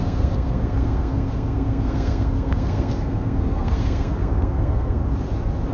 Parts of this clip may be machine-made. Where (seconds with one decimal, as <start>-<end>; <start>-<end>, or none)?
0.0-5.0